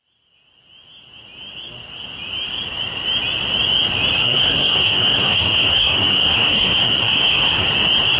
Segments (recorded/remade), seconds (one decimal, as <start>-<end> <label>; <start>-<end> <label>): 0.0-4.2 recorded; 4.2-7.7 remade; 7.7-8.2 recorded